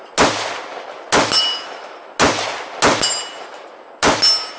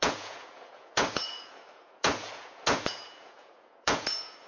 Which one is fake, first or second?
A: second